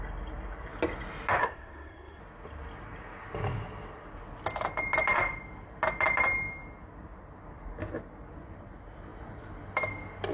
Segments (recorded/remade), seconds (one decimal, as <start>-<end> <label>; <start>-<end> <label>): 0.0-1.4 recorded; 1.4-2.2 remade; 2.2-10.3 recorded

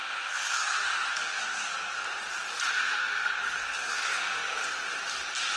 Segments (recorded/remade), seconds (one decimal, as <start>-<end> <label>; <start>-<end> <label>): 0.0-2.0 remade; 2.0-2.7 recorded; 2.7-4.6 remade; 4.6-5.6 recorded

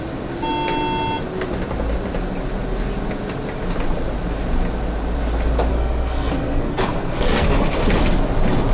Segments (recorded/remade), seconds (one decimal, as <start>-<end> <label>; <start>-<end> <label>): 0.0-5.7 recorded; 5.7-7.7 remade; 7.7-8.7 recorded